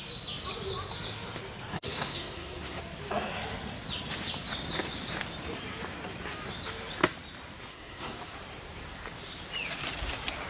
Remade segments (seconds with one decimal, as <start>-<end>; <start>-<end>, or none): 1.7-2.8; 7.7-8.2